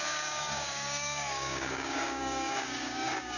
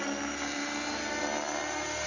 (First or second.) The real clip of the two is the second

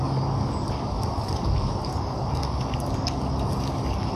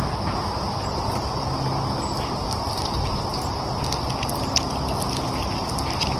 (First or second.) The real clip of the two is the second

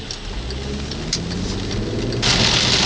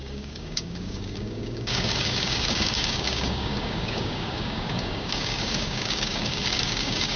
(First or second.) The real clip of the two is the first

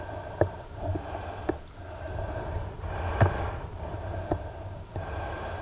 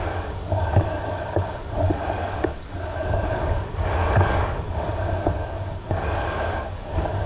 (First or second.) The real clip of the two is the first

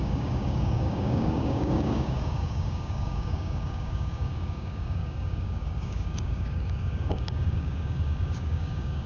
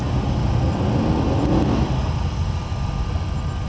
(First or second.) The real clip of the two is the second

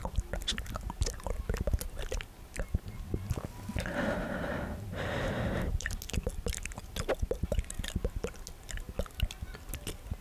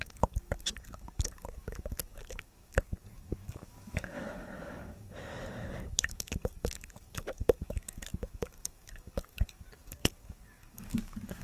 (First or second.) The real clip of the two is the first